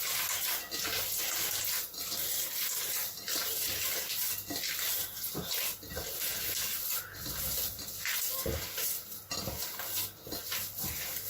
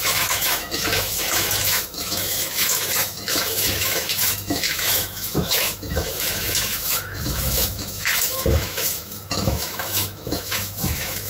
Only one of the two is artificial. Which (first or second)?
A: second